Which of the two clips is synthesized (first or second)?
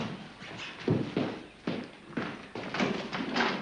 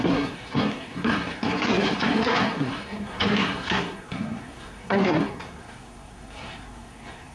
second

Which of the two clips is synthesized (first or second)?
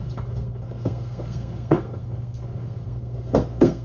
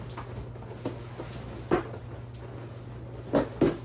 first